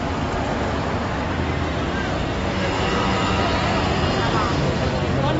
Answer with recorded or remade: recorded